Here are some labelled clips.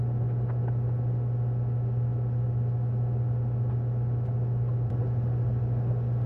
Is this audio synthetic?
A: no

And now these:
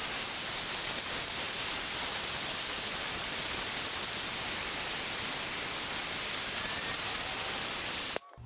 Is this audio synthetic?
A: no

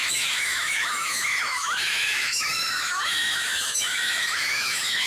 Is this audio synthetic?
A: yes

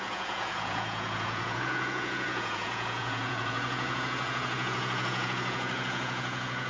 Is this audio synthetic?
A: yes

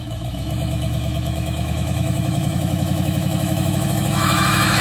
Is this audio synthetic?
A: yes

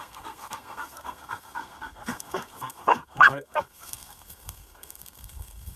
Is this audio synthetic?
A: yes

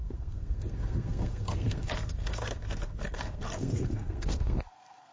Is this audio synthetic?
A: yes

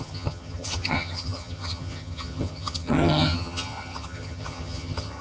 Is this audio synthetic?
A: yes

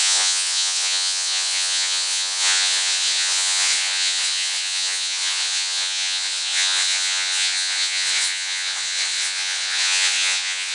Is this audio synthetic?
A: yes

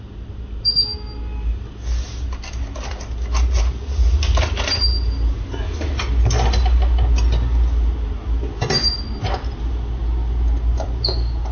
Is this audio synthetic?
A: no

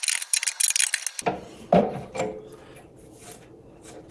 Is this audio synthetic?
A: no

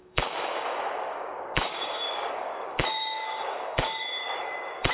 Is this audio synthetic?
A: yes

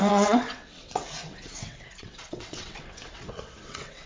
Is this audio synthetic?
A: yes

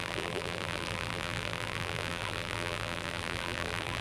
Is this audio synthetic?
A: yes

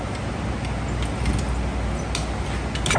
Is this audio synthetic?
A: no